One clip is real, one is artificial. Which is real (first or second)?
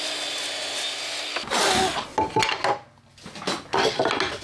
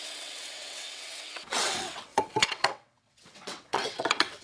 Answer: first